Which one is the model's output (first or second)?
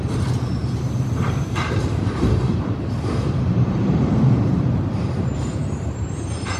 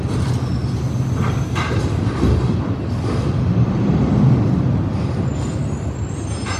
first